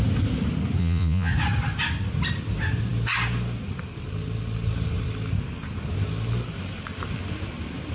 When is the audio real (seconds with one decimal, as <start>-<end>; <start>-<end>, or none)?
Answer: 0.0-0.8; 1.3-7.9